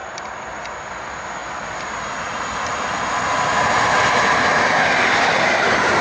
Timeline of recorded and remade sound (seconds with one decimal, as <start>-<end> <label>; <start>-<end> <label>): 0.0-6.0 recorded